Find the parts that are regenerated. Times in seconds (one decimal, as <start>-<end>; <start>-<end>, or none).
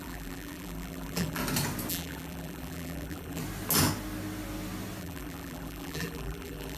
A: 0.0-1.4; 1.9-3.4; 5.0-6.8